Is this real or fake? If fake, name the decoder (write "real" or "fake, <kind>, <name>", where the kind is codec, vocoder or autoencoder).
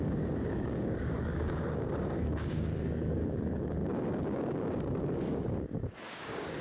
fake, codec, DAC